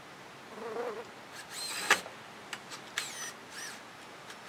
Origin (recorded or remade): recorded